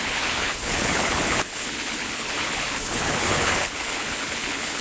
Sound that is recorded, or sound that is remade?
remade